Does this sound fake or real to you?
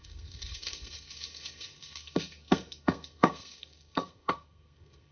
fake